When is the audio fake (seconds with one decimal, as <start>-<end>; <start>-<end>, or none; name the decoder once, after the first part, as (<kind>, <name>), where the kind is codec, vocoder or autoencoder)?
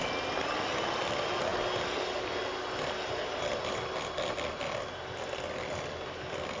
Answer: none